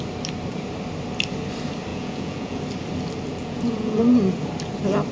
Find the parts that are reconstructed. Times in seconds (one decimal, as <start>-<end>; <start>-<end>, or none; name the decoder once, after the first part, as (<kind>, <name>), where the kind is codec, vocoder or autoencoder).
1.9-2.6 (vocoder, Vocos); 3.3-4.0